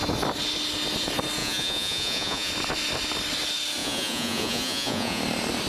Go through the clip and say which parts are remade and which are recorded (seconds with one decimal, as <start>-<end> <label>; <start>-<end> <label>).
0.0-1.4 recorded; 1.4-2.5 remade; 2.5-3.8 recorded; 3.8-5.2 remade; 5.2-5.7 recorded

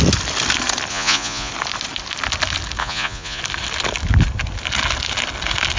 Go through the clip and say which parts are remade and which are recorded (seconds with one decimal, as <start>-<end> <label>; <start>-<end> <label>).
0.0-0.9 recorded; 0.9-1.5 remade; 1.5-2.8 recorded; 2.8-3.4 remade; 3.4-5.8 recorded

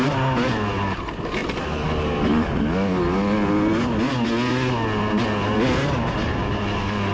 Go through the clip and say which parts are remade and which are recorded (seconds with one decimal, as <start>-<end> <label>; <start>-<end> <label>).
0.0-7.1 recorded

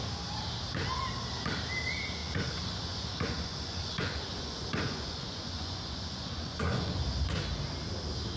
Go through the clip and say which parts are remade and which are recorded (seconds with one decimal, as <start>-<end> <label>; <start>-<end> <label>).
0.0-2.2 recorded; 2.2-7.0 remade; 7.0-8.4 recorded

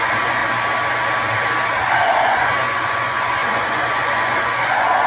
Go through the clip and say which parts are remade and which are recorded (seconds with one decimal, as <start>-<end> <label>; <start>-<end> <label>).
0.0-0.4 remade; 0.4-1.9 recorded; 1.9-5.1 remade